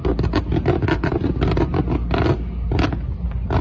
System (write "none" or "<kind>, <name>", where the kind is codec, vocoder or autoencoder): none